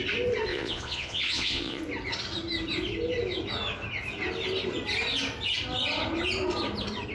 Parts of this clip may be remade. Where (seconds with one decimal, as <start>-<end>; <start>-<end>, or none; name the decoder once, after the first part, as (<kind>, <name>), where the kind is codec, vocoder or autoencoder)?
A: 0.5-1.8 (vocoder, Vocos)